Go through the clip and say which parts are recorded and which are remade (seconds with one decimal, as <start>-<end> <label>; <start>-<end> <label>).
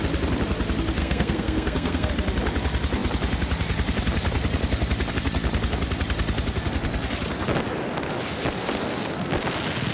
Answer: 0.0-1.0 recorded; 1.0-2.1 remade; 2.1-9.9 recorded